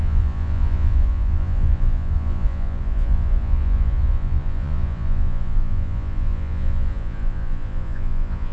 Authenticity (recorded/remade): remade